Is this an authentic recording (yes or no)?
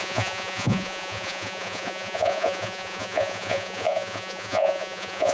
no